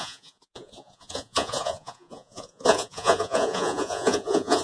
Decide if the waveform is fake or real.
fake